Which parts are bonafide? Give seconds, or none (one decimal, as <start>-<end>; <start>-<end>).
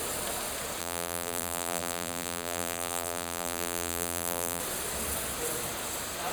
0.0-0.8; 4.6-6.3